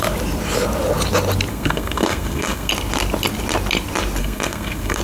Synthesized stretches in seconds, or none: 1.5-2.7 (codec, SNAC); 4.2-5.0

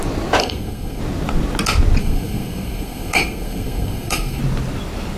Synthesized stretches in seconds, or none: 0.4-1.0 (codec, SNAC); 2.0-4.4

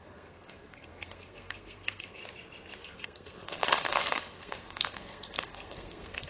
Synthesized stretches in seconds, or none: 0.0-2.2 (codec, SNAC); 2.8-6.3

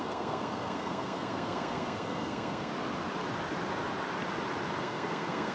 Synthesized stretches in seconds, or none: 0.0-2.7 (codec, SNAC); 4.8-5.5

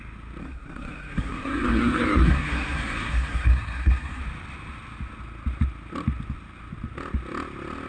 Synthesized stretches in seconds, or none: 0.4-4.2 (codec, SNAC)